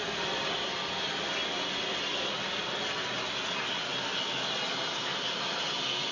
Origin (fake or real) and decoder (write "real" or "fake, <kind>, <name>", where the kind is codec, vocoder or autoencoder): real